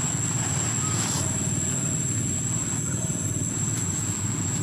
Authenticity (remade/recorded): recorded